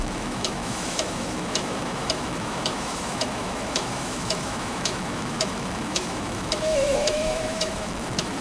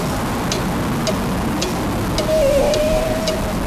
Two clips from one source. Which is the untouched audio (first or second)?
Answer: second